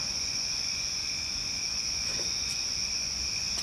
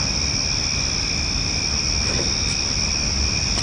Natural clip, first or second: second